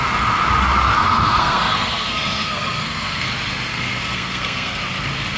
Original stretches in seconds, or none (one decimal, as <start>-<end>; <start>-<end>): 0.0-1.0; 3.3-3.7; 4.8-5.4